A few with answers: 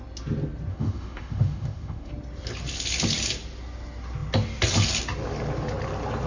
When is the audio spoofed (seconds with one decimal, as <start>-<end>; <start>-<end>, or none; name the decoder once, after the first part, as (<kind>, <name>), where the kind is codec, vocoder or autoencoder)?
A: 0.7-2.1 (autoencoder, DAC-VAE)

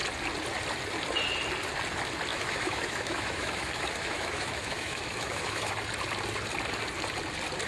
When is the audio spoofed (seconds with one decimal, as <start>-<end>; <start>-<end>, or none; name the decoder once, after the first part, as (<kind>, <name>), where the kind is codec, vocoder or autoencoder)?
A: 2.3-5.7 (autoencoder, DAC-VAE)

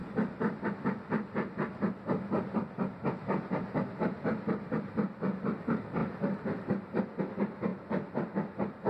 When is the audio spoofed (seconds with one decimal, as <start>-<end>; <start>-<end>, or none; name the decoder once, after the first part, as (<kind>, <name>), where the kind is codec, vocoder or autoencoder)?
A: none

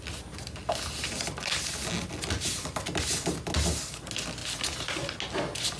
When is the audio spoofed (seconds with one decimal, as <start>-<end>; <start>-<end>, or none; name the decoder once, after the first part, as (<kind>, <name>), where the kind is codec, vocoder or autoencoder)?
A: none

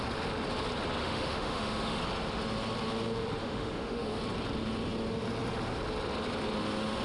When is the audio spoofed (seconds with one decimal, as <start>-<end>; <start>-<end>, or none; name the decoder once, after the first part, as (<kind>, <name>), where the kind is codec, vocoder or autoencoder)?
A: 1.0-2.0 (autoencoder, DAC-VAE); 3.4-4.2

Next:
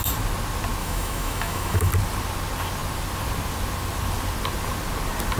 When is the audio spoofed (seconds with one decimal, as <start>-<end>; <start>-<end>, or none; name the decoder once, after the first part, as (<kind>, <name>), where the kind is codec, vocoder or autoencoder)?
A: 0.8-1.9 (autoencoder, DAC-VAE)

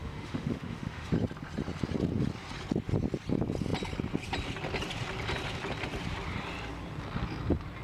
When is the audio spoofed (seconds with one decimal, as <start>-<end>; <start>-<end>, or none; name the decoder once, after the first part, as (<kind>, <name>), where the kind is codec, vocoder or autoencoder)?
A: 0.0-1.1 (autoencoder, DAC-VAE)